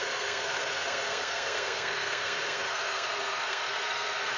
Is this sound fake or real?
fake